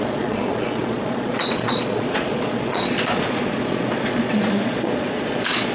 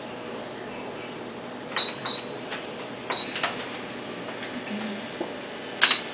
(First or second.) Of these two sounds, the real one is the second